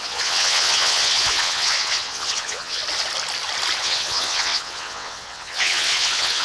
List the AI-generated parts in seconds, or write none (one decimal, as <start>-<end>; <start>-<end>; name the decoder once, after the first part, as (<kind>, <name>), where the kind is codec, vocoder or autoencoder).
0.0-2.8 (vocoder, WaveNeXt); 3.8-6.4